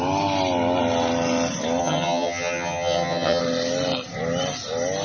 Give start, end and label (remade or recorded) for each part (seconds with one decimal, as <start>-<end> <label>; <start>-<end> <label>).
0.0-1.8 recorded; 1.8-3.4 remade; 3.4-5.0 recorded